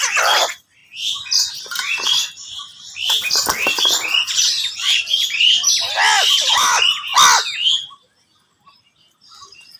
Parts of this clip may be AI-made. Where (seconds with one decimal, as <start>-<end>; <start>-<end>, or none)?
0.0-0.8; 1.5-2.7; 6.4-7.1; 8.8-9.8